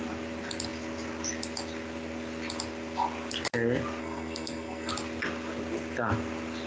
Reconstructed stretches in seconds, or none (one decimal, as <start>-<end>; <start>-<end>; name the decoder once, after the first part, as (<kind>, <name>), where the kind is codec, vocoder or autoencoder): 4.0-4.9 (codec, SNAC)